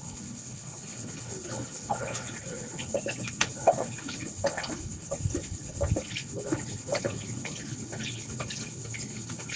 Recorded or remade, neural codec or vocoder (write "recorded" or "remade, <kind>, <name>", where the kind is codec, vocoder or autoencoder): remade, codec, HILCodec